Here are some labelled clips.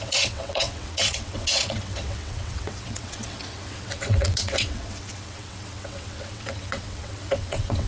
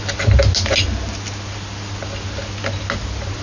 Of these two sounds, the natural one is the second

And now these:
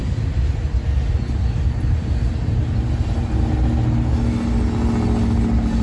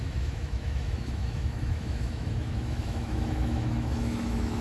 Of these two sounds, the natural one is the first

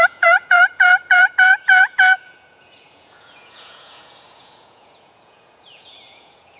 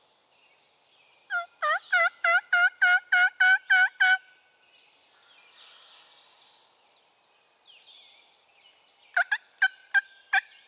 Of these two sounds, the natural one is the second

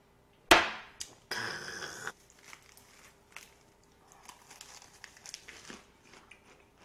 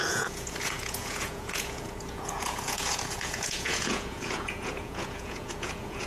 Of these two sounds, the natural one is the first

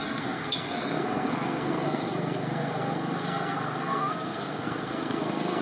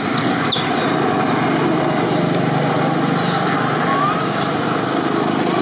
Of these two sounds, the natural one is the second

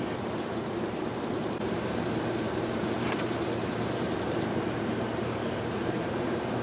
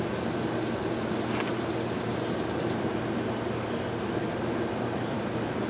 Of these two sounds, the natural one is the second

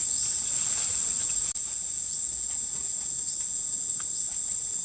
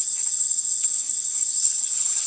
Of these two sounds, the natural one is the first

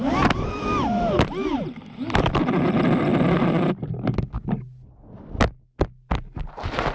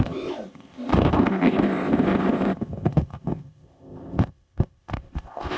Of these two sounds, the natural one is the first